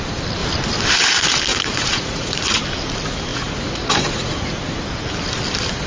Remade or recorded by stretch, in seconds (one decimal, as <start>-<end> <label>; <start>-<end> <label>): 0.0-1.5 recorded; 1.5-2.6 remade; 2.6-3.3 recorded; 3.3-4.8 remade; 4.8-5.9 recorded